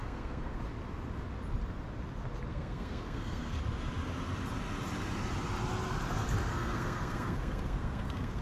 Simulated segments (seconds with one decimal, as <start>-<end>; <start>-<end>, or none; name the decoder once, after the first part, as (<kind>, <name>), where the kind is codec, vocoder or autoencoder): 0.0-0.6 (codec, SNAC); 2.5-3.6; 6.5-8.4